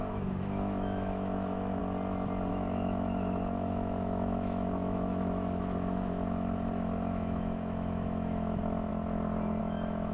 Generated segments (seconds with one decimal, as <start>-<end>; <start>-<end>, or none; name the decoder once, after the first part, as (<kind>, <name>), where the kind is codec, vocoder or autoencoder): 0.0-1.8 (autoencoder, DAC-VAE); 2.5-8.9; 9.6-10.1

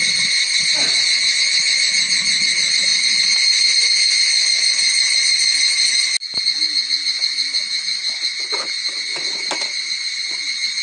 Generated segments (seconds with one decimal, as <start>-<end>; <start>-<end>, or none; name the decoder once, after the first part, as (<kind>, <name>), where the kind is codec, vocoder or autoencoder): none

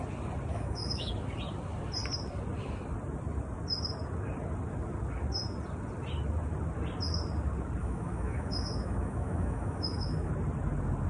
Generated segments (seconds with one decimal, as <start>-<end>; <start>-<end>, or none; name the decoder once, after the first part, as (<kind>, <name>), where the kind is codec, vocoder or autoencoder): 0.5-1.1 (autoencoder, DAC-VAE); 7.8-10.3

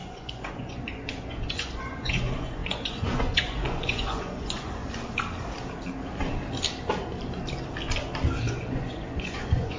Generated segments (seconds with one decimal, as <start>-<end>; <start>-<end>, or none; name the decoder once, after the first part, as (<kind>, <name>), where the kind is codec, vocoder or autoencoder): 0.0-4.8 (vocoder, Vocos); 8.5-9.8

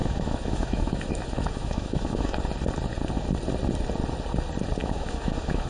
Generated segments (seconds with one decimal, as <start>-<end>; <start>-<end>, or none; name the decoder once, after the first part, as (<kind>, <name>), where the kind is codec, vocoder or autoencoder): 0.0-2.4 (autoencoder, DAC-VAE); 4.8-5.7